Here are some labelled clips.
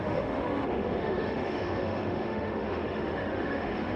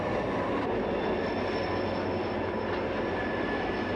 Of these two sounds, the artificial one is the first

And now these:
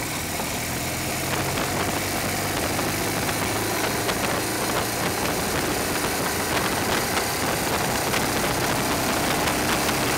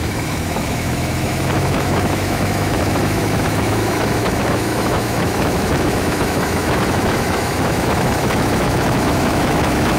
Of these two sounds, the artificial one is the second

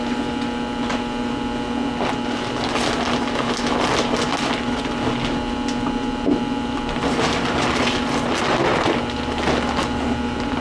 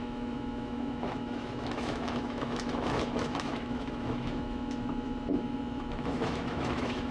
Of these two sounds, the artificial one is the second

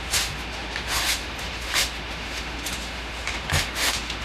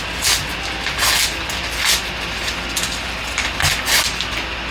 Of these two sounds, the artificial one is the first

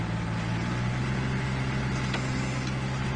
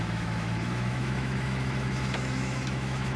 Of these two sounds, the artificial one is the second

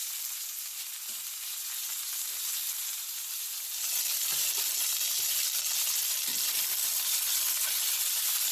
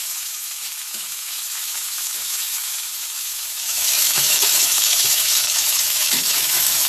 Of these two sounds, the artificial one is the second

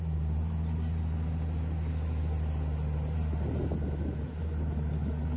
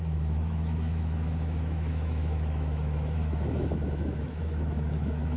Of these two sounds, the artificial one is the second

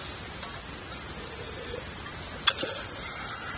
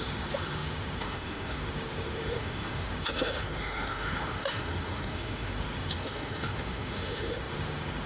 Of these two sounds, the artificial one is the second